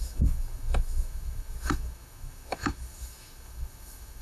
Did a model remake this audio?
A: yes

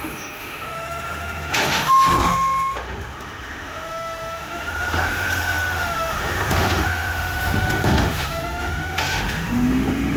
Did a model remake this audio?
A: yes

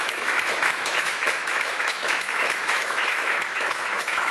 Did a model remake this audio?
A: yes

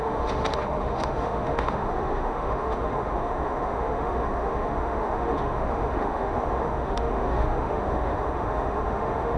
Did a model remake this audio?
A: yes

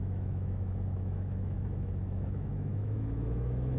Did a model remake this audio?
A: yes